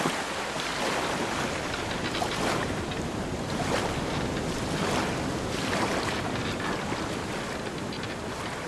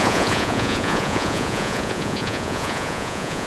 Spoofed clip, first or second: second